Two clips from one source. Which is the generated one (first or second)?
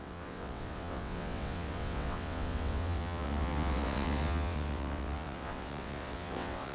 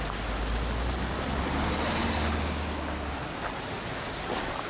first